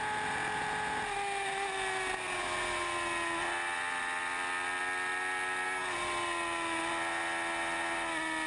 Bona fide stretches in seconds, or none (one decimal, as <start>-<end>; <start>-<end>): 0.0-8.5